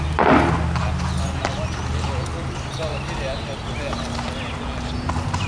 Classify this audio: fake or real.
real